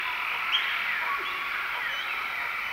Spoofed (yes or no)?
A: no